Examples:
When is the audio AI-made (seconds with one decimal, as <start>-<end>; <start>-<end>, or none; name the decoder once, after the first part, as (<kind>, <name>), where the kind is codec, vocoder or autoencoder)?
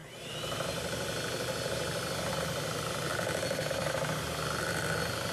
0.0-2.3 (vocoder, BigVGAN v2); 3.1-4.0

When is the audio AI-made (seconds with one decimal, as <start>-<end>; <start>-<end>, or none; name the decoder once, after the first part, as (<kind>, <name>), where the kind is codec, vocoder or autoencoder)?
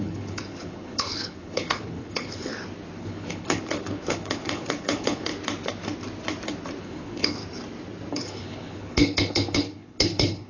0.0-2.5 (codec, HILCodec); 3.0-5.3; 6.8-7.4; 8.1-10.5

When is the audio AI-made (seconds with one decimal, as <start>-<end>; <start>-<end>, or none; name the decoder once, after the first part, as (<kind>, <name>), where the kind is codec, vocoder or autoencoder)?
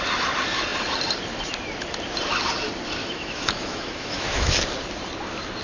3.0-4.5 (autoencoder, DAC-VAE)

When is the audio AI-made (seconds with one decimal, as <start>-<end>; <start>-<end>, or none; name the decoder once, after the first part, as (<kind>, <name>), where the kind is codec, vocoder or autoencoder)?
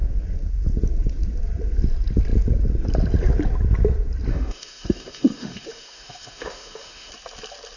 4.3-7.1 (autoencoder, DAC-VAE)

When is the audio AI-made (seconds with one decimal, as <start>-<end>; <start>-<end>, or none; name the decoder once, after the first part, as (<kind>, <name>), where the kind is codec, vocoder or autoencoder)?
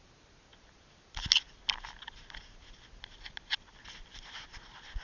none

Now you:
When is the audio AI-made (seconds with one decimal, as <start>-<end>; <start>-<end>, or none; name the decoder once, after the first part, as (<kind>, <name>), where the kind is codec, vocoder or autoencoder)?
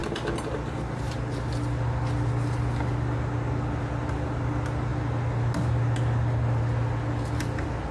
none